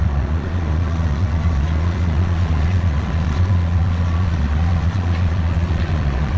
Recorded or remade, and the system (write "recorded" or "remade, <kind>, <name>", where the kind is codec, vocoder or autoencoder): remade, vocoder, Vocos